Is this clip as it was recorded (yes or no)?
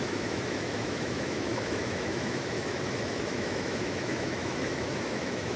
no